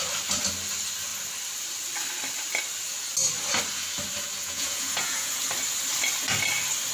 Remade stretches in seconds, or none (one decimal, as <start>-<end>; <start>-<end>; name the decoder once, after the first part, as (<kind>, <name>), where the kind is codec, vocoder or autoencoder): 4.4-5.4 (vocoder, Vocos)